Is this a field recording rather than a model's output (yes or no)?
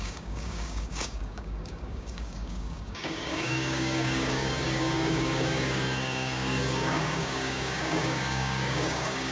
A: no